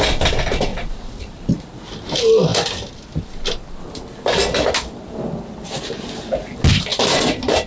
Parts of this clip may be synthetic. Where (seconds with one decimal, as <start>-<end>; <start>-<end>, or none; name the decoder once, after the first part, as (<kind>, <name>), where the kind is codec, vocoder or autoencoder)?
0.7-1.8 (vocoder, BigVGAN v2); 6.9-7.7